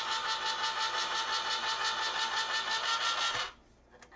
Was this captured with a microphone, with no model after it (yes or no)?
yes